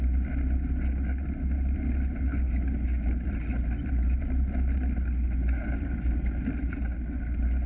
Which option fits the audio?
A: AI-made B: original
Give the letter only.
B